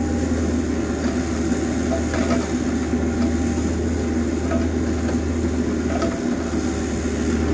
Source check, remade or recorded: recorded